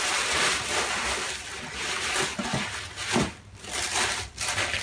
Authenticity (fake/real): real